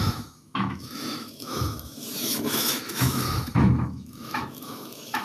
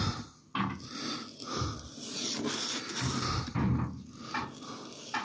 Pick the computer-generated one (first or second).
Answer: first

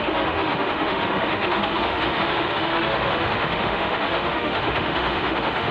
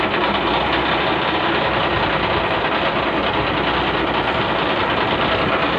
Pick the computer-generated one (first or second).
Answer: first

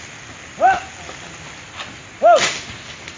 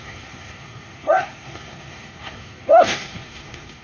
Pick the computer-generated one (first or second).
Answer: second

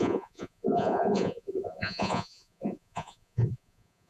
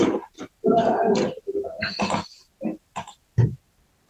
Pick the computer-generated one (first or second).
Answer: first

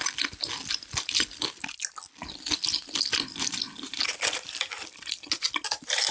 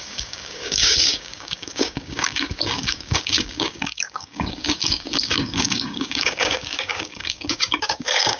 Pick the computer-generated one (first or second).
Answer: second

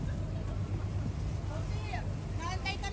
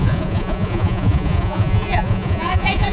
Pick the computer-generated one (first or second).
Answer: second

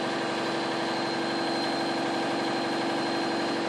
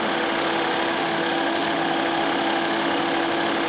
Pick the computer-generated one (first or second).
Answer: second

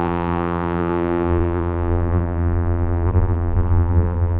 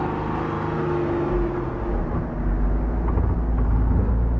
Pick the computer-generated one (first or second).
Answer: first